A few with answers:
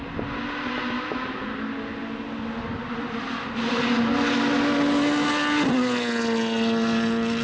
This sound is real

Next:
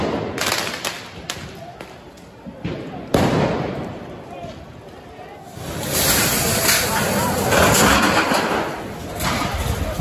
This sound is real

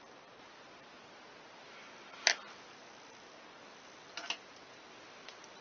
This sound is real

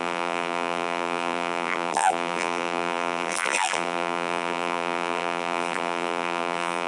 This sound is fake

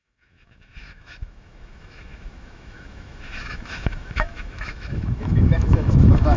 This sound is fake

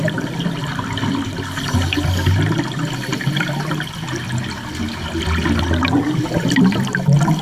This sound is real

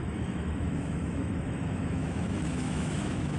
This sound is fake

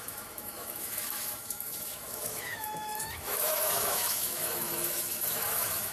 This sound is fake